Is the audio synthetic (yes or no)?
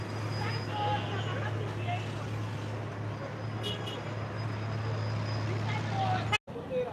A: no